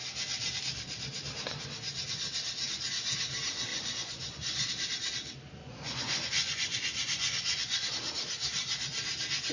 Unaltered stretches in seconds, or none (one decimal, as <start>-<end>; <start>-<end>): 0.0-3.7; 4.7-5.6; 7.9-9.5